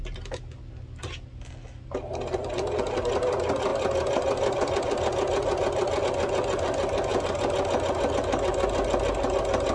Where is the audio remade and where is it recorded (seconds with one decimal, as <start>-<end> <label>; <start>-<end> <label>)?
0.0-3.7 recorded; 3.7-6.0 remade; 6.0-9.7 recorded